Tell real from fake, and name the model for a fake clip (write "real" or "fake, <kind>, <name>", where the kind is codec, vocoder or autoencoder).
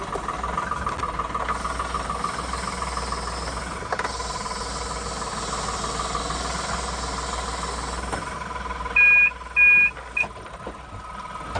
real